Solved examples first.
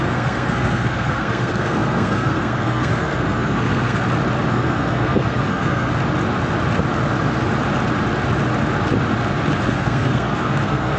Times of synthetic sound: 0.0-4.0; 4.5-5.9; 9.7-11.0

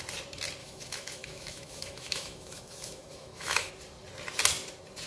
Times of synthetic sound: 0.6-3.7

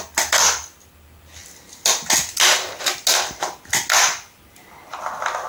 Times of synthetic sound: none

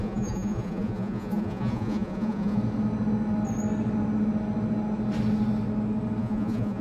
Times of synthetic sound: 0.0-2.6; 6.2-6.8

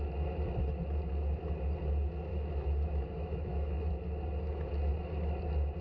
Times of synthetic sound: 2.3-3.9

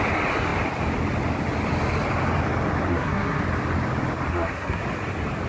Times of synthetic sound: 2.9-3.4; 4.3-4.8

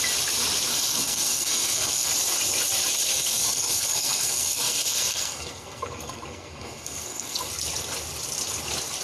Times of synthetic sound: 0.7-2.1; 3.1-7.5